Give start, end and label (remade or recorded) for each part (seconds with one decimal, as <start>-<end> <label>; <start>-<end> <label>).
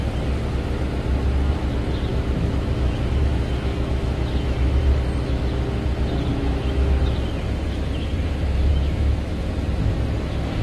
0.0-2.1 recorded; 2.1-4.8 remade; 4.8-6.3 recorded; 6.3-7.0 remade; 7.0-8.7 recorded; 8.7-9.4 remade; 9.4-10.6 recorded